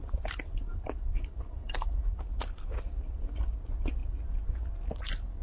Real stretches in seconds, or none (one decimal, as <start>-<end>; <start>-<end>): 0.0-0.6; 2.2-5.4